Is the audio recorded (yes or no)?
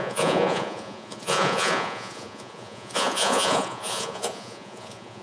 no